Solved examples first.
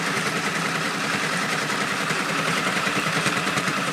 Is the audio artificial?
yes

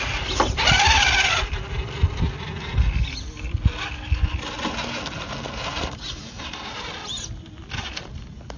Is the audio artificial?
no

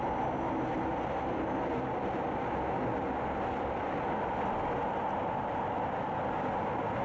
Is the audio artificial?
no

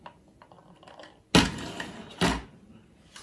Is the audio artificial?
no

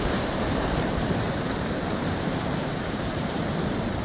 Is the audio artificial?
yes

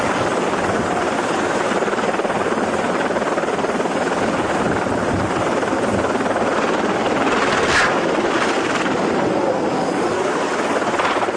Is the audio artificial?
no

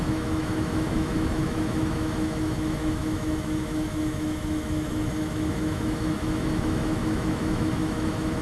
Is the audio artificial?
yes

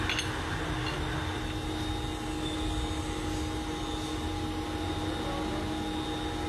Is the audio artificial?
no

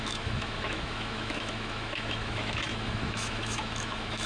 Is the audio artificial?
yes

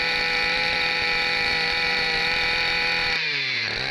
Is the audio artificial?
yes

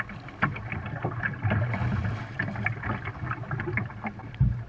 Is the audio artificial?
no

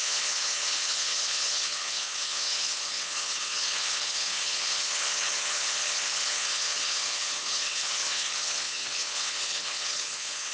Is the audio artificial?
yes